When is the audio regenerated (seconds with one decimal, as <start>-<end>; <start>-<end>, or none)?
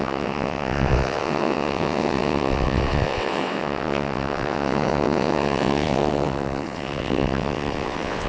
0.0-8.3